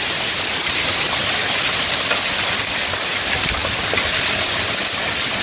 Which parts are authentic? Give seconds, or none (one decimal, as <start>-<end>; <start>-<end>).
0.0-5.4